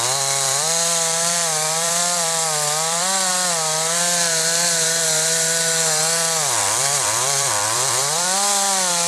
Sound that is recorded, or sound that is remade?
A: remade